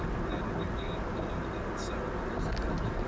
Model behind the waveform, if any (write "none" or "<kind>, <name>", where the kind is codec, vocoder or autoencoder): none